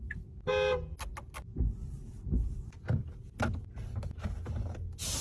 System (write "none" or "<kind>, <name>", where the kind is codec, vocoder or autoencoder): none